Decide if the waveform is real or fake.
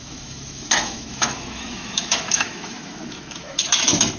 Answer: fake